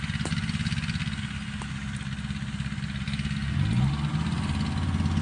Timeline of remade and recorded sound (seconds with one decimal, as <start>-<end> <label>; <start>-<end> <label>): 0.0-5.2 recorded